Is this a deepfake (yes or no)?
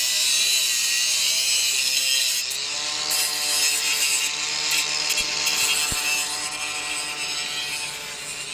no